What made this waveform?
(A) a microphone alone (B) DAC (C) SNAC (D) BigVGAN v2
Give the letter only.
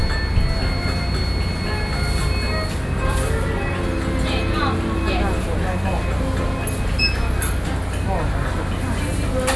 A